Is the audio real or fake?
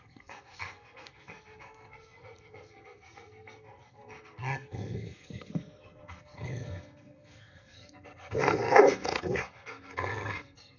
fake